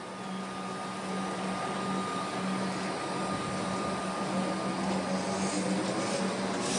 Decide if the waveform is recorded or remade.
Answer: recorded